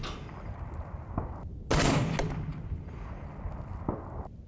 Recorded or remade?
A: recorded